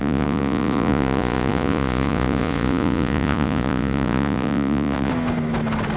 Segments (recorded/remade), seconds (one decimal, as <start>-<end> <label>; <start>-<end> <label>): 0.0-5.1 remade; 5.1-6.0 recorded

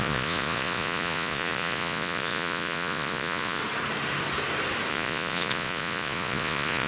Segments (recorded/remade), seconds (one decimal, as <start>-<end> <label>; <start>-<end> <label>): 0.0-3.6 remade; 3.6-4.9 recorded; 4.9-6.9 remade

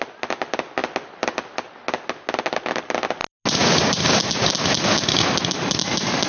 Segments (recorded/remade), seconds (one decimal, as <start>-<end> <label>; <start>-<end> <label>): 0.0-6.3 recorded

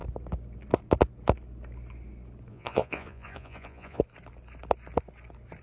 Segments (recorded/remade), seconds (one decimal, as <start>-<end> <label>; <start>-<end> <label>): 0.0-2.5 recorded; 2.5-4.0 remade; 4.0-5.6 recorded

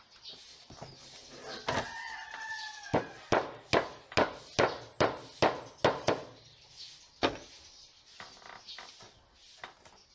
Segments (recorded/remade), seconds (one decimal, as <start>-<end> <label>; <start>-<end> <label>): 0.0-10.1 recorded

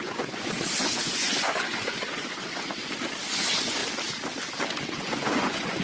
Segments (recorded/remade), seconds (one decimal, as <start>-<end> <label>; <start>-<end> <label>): 0.0-2.8 remade; 2.8-3.3 recorded; 3.3-3.8 remade; 3.8-4.9 recorded; 4.9-5.8 remade